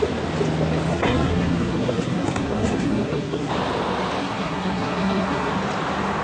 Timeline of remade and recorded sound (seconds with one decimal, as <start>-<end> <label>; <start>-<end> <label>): 0.0-0.9 recorded; 0.9-3.5 remade; 3.5-4.2 recorded; 4.2-5.5 remade; 5.5-6.2 recorded